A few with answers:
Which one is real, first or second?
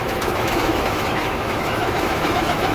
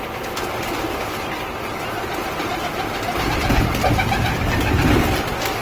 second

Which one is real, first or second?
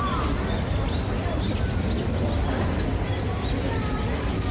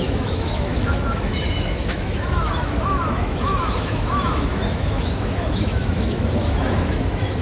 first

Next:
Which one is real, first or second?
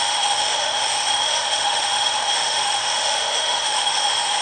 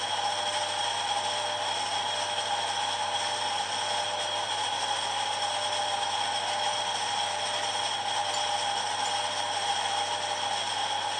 second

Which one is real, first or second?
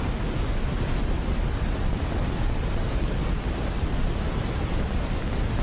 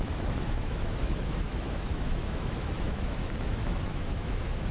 first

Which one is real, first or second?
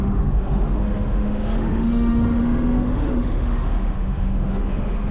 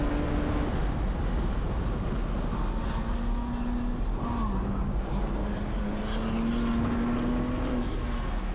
second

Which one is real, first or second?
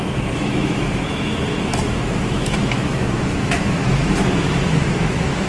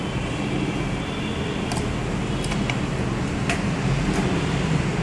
second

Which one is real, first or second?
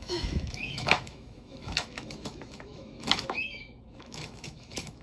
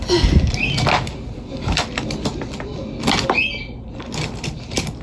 second